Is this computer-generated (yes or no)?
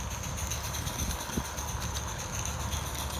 no